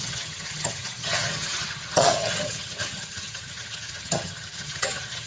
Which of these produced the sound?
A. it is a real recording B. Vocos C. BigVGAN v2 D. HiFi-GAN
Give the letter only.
D